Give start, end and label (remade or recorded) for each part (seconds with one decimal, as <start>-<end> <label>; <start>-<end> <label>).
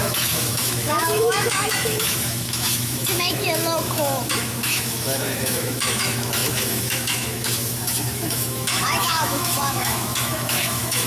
0.0-11.1 remade